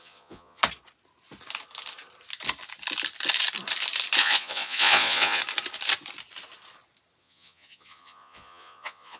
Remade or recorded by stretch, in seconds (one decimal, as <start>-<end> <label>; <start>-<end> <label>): 0.0-0.6 remade; 0.6-4.2 recorded; 4.2-5.4 remade; 5.4-7.2 recorded; 7.2-9.2 remade